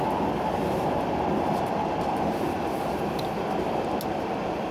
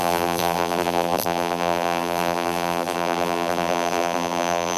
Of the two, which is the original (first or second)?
first